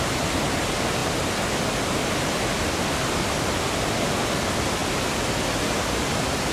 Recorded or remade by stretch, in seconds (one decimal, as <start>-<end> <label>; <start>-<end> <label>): 0.0-6.5 recorded